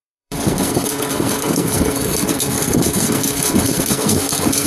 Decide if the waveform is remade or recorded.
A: remade